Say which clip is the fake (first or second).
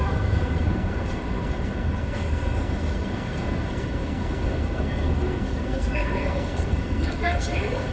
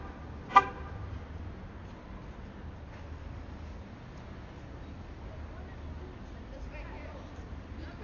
first